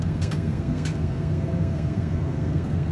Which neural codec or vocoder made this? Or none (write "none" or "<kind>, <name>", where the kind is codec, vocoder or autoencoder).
codec, SNAC